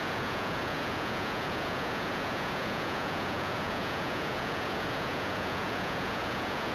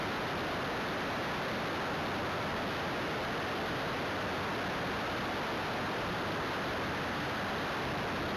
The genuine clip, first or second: second